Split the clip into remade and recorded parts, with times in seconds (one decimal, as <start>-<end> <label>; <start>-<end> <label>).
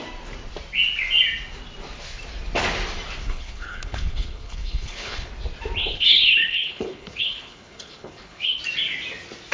0.0-3.2 recorded; 3.2-5.3 remade; 5.3-5.8 recorded; 5.8-8.6 remade; 8.6-9.5 recorded